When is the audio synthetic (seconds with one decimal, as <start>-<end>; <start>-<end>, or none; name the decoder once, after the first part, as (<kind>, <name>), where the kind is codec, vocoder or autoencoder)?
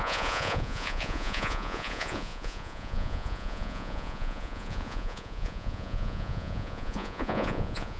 0.0-8.0 (vocoder, Vocos)